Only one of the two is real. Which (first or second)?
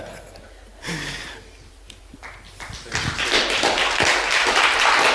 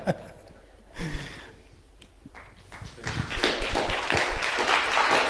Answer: first